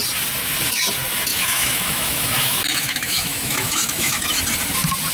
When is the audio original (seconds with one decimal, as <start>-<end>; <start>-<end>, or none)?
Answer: 0.0-1.3; 4.4-5.1